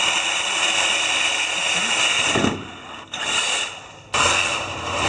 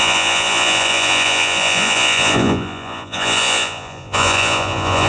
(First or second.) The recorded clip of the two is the first